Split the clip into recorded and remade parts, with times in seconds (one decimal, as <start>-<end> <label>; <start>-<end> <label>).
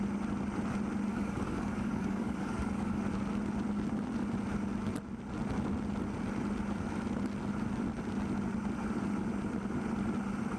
0.0-1.1 recorded; 1.1-3.0 remade; 3.0-10.6 recorded